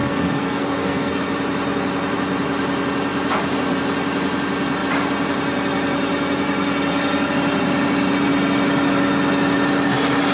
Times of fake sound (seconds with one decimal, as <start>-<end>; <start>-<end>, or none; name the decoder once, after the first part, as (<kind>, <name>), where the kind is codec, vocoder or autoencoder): 0.0-1.2 (codec, SNAC)